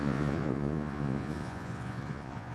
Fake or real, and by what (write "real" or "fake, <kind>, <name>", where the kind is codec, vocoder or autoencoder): fake, vocoder, Vocos